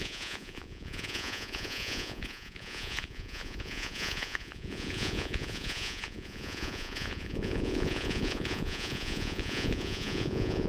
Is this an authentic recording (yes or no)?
no